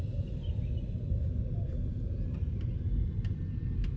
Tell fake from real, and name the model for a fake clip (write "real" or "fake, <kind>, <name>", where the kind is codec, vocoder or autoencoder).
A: real